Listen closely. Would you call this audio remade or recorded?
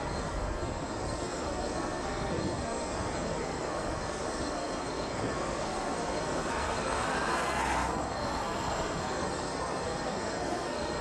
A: remade